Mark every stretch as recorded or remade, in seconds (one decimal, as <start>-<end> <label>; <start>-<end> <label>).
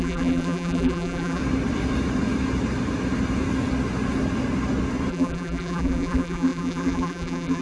0.0-1.4 remade; 1.4-5.1 recorded; 5.1-7.6 remade